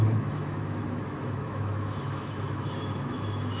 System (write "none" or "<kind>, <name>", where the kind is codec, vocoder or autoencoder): autoencoder, DAC-VAE